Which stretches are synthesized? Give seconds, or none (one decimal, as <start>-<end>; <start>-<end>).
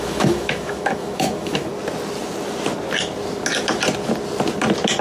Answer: 0.0-1.7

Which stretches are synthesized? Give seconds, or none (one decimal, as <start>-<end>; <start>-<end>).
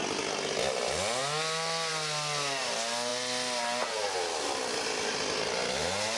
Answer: none